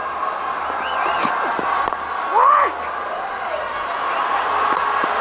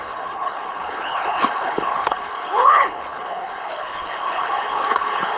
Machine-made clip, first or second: second